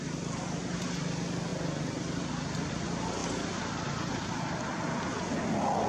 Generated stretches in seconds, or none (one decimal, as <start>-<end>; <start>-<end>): none